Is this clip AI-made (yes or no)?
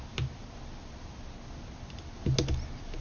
no